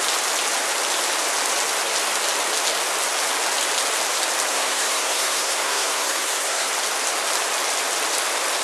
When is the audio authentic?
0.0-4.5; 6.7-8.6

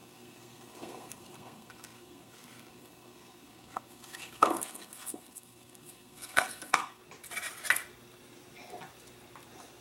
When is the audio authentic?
7.0-9.8